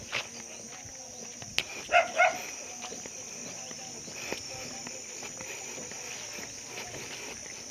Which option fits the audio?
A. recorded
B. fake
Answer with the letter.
A